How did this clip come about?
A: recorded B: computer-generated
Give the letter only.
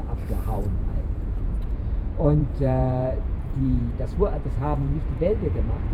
B